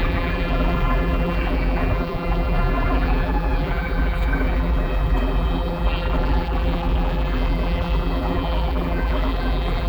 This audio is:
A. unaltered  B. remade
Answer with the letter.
B